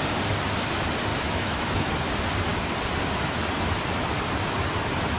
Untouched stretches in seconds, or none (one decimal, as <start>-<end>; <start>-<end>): 0.0-1.1; 1.9-5.2